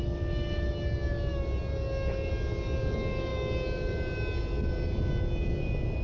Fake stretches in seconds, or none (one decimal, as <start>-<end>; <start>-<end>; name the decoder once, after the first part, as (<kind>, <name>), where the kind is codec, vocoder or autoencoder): none